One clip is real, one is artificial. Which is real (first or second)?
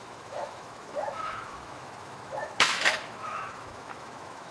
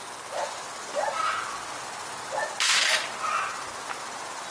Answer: second